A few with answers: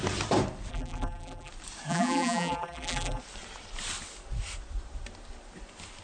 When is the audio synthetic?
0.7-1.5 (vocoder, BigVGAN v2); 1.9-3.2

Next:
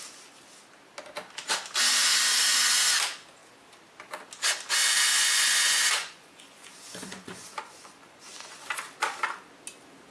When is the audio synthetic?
5.1-8.7 (vocoder, Vocos)

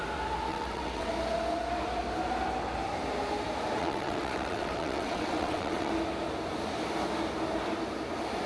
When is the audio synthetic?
0.5-1.1 (vocoder, WaveNeXt); 3.8-5.9

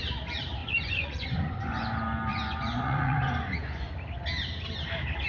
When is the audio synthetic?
0.6-1.8 (vocoder, Vocos); 2.3-3.9